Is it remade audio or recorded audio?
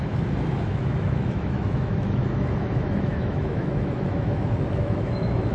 remade